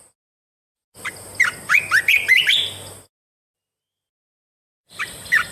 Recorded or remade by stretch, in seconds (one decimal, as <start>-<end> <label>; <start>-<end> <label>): 0.0-2.1 recorded; 2.1-3.1 remade; 3.1-4.8 recorded; 4.8-5.5 remade